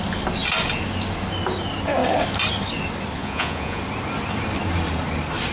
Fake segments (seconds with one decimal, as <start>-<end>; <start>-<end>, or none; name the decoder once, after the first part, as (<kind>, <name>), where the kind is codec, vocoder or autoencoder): 3.2-3.8 (vocoder, Vocos)

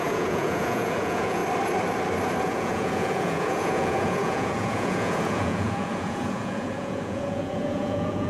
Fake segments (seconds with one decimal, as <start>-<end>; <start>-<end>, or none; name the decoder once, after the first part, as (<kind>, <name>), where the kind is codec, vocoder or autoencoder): 0.0-1.4 (vocoder, Vocos); 2.4-8.3

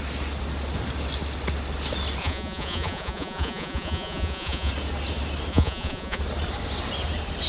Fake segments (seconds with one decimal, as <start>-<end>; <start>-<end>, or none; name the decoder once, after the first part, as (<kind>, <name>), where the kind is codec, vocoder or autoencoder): 2.2-4.7 (vocoder, Vocos); 5.5-6.2

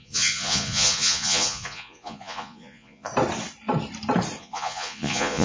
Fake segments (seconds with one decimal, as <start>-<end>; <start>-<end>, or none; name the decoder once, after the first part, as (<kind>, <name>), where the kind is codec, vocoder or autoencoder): 0.0-3.1 (vocoder, Vocos); 4.4-5.4